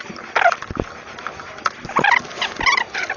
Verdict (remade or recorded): recorded